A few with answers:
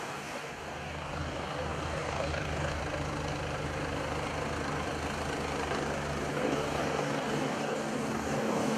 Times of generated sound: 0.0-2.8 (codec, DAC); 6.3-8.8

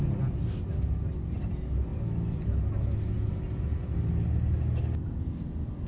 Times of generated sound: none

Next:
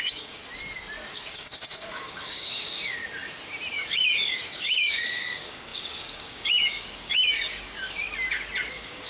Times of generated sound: 0.0-0.4 (codec, DAC); 1.1-3.0; 3.7-8.0; 8.7-9.1

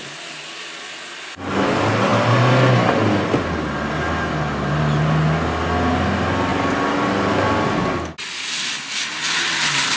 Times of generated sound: none

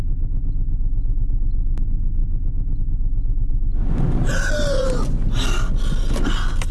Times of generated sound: none

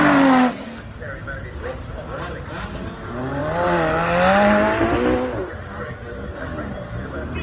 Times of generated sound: none

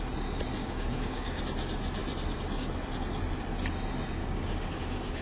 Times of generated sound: 0.6-1.4 (codec, DAC); 4.2-5.2